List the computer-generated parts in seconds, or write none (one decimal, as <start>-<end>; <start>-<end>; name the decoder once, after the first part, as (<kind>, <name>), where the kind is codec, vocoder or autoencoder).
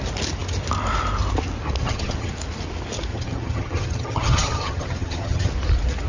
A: 1.8-2.3 (vocoder, HiFi-GAN); 3.1-5.5